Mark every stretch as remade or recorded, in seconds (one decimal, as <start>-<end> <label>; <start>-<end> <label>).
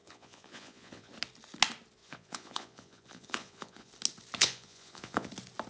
0.0-1.1 remade; 1.1-2.0 recorded; 2.0-3.9 remade; 3.9-4.4 recorded; 4.4-5.3 remade; 5.3-5.7 recorded